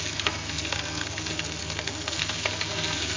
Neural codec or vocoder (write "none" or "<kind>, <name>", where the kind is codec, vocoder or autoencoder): codec, SNAC